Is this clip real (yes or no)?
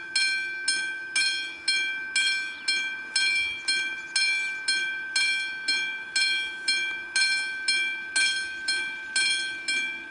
yes